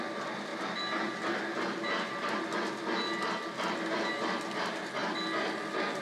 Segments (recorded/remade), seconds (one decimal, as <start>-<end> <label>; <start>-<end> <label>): 0.0-6.0 recorded